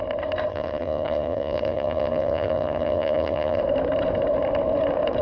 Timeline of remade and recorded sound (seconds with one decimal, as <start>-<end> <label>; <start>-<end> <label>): 0.0-0.5 recorded; 0.5-3.6 remade; 3.6-5.2 recorded